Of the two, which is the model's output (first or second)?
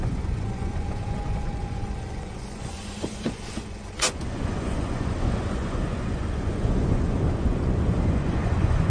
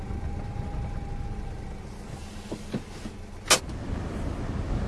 first